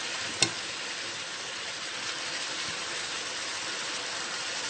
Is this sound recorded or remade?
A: recorded